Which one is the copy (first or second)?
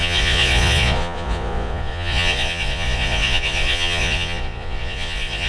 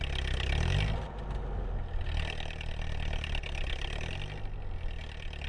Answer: first